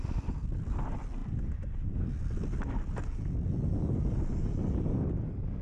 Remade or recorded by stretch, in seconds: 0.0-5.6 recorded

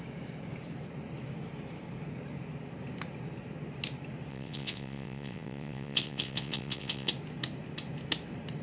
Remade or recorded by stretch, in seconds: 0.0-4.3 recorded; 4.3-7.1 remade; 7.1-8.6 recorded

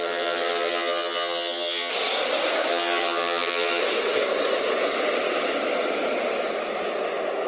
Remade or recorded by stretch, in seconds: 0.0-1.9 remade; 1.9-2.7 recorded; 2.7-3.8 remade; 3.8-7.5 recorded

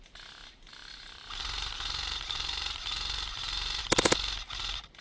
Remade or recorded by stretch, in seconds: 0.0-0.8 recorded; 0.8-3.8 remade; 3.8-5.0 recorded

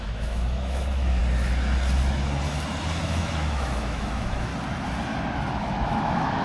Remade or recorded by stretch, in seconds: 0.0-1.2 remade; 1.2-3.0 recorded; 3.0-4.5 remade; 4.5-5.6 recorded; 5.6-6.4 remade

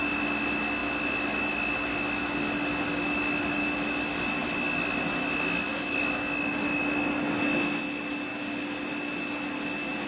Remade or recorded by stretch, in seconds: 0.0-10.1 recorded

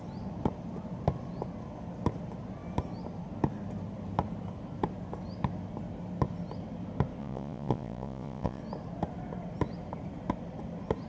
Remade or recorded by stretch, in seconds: 0.0-7.2 recorded; 7.2-8.6 remade; 8.6-11.1 recorded

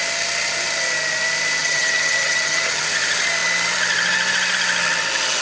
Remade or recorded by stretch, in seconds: 0.0-1.6 recorded; 1.6-2.9 remade; 2.9-5.4 recorded